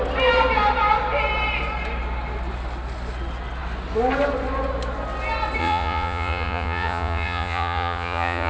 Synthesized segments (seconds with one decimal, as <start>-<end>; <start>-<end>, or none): 5.6-8.5